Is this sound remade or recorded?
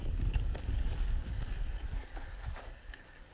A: remade